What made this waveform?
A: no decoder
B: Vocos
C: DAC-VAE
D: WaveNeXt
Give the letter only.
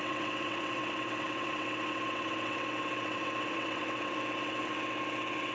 D